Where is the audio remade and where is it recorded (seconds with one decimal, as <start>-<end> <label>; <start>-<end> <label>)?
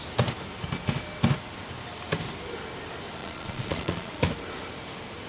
0.0-3.2 recorded; 3.2-4.2 remade; 4.2-5.3 recorded